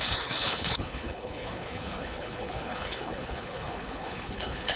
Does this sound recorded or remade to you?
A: remade